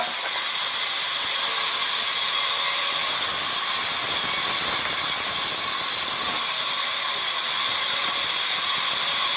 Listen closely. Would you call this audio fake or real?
real